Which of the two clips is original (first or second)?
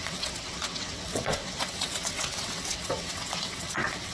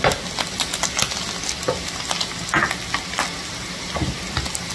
second